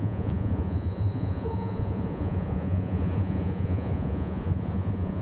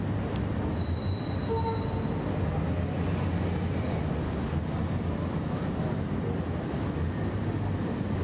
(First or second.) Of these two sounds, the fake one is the first